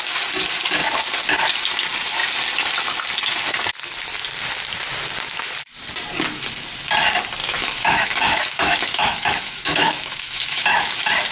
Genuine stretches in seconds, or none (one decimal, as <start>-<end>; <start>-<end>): 0.0-7.4; 10.9-11.3